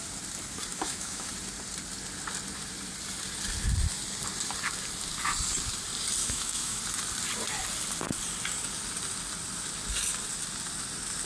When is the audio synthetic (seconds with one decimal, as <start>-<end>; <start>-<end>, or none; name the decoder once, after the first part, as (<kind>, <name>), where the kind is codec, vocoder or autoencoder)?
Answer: 0.7-1.3 (autoencoder, DAC-VAE); 6.2-6.8